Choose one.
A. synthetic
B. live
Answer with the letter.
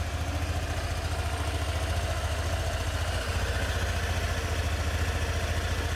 B